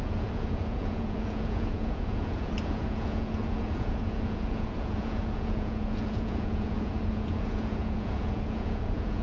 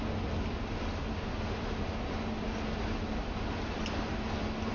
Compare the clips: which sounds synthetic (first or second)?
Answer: first